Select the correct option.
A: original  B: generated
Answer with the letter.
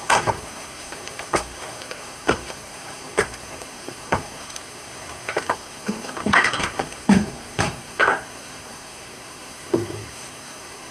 B